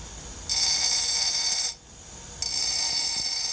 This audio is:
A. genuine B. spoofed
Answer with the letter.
A